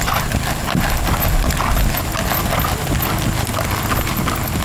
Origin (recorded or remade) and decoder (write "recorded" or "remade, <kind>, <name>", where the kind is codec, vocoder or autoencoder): recorded